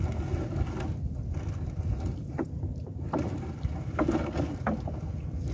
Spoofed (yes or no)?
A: no